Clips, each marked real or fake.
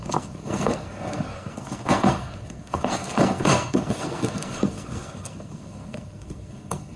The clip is fake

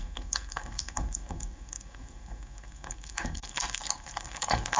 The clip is fake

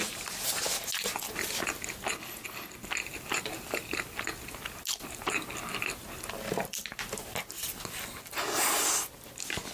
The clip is real